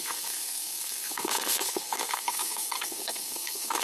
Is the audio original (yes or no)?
no